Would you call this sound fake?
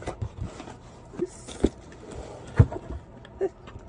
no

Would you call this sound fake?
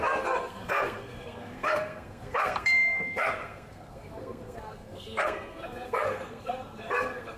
yes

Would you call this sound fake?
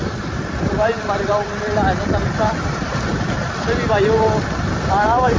no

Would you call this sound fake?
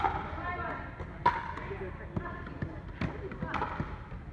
no